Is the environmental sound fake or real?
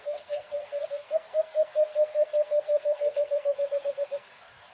fake